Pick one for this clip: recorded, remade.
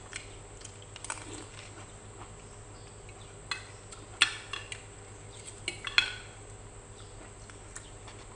recorded